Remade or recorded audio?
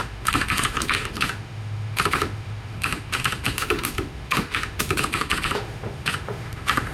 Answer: remade